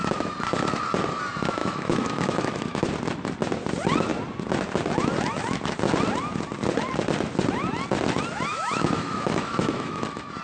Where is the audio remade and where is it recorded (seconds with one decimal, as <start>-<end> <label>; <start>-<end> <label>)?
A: 0.0-1.6 recorded; 1.6-2.9 remade; 2.9-8.5 recorded; 8.5-10.0 remade; 10.0-10.4 recorded